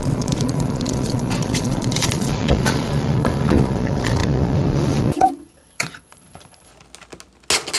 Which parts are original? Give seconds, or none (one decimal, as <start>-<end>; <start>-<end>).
6.7-7.8